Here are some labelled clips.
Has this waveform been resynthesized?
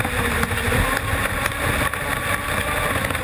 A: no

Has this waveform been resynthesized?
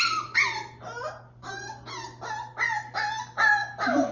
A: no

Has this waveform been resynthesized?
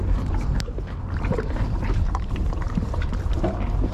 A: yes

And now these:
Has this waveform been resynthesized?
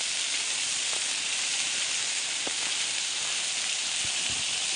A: no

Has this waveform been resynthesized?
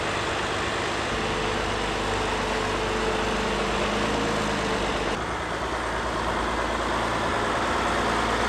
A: no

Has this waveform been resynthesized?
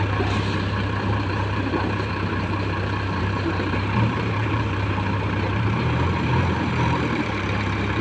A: yes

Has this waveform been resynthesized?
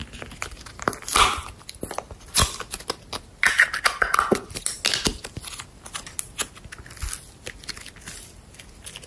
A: no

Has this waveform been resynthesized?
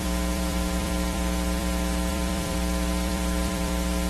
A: yes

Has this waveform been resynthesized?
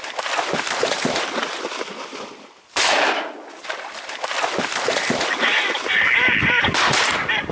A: yes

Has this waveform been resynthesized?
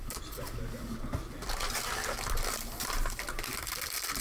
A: no